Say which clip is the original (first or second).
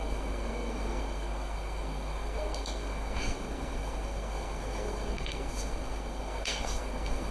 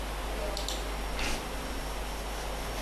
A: second